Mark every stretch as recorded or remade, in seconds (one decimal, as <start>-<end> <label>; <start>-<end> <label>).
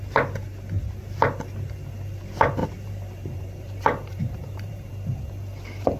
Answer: 0.0-2.6 recorded; 2.6-4.9 remade; 4.9-6.0 recorded